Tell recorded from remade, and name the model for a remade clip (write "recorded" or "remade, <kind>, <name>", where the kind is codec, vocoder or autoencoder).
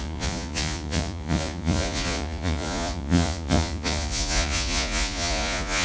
remade, vocoder, Vocos